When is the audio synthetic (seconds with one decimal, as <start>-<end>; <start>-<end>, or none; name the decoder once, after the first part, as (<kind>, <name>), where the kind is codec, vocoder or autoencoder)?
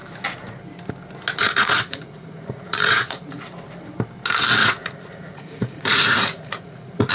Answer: 1.4-3.7 (vocoder, Vocos); 4.6-7.1